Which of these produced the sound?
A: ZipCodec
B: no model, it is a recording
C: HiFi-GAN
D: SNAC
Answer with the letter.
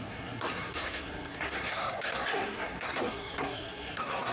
D